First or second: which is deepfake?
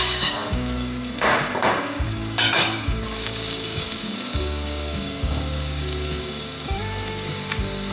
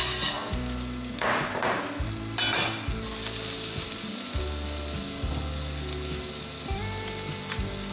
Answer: first